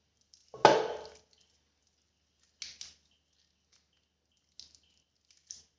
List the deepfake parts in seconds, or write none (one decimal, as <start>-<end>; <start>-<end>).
none